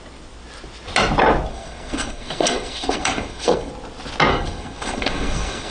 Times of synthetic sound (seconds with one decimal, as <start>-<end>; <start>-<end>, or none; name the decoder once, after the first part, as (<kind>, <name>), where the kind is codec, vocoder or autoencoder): 1.5-3.7 (codec, SNAC); 4.3-5.7